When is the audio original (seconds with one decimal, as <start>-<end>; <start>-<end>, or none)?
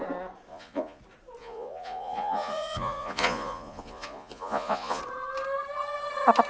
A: 0.0-0.5; 1.0-1.4; 5.0-6.5